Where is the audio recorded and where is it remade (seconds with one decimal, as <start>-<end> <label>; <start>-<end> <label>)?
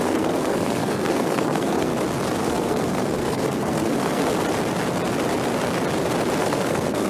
0.0-1.9 remade; 1.9-2.4 recorded; 2.4-4.2 remade; 4.2-6.4 recorded; 6.4-7.1 remade